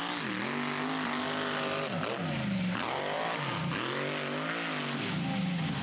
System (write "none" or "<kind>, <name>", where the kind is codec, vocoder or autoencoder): none